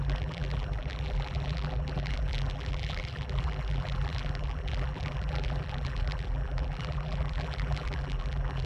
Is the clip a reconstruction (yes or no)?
yes